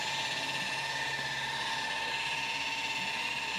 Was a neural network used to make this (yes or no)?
no